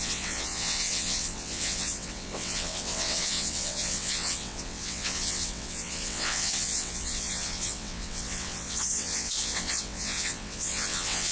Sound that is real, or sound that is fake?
fake